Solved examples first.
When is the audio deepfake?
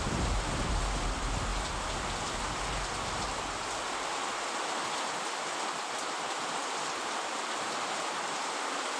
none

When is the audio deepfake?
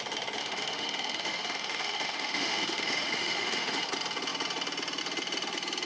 0.4-3.9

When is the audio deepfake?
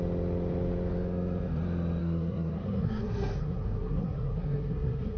2.0-5.2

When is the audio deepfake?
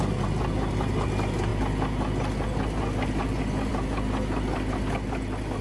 none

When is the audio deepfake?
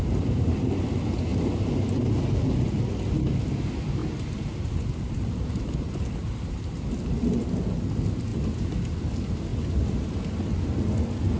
1.3-2.2; 4.0-6.9; 8.3-8.9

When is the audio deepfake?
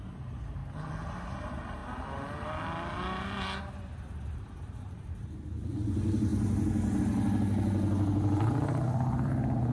0.0-0.6; 1.3-1.8; 3.6-6.3; 7.0-9.7